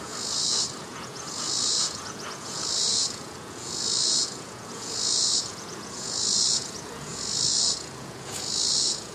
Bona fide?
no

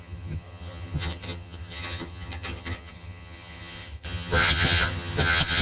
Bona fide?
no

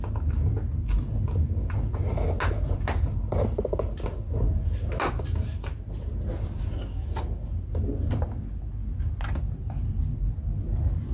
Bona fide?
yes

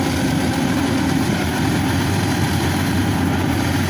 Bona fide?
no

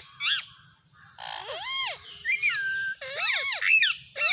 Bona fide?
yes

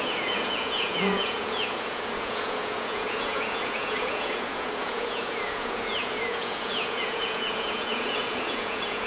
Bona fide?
no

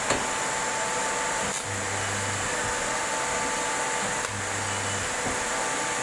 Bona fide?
yes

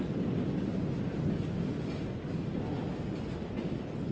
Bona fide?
yes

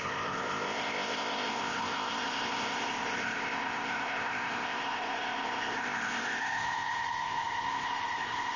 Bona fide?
no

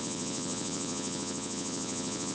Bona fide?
no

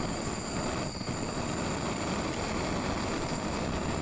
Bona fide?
yes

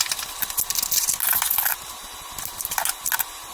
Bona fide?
yes